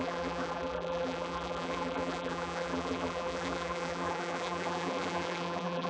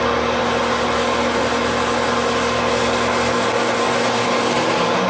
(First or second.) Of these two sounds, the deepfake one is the first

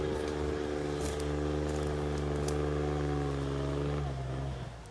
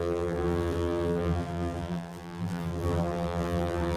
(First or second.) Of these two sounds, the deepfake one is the second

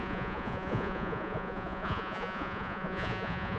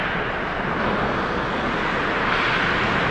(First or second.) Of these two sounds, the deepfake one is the first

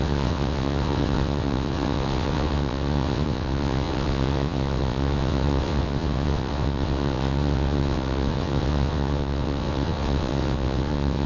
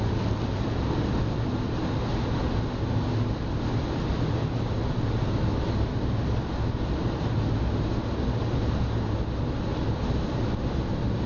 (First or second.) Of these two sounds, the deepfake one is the first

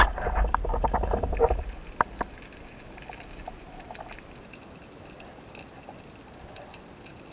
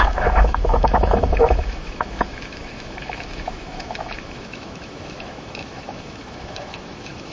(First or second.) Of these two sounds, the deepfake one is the second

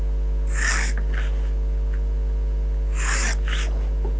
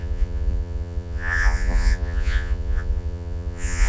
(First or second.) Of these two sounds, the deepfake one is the second